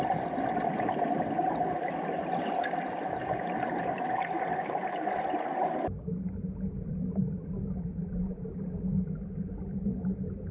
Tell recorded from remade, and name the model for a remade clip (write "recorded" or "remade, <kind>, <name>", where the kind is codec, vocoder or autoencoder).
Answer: recorded